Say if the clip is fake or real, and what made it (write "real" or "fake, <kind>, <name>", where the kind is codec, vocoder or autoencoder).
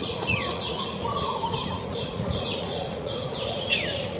fake, vocoder, Vocos